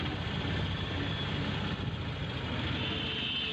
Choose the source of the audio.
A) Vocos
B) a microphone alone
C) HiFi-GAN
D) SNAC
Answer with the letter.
B